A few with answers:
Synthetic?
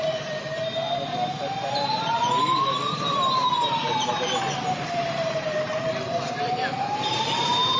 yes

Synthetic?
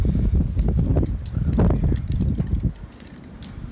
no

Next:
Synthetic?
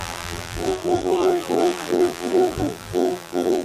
yes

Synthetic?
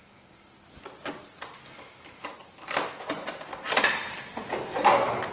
no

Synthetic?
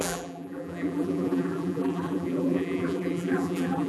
yes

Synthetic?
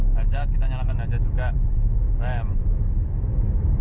no